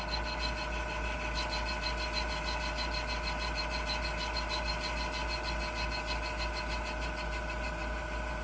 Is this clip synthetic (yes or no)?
no